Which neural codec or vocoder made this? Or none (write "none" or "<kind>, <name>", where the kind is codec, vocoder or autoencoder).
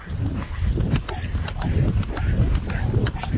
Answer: none